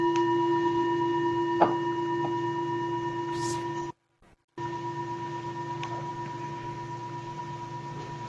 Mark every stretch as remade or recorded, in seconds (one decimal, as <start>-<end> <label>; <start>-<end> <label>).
0.0-8.3 recorded